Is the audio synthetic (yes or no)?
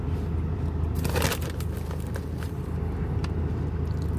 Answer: no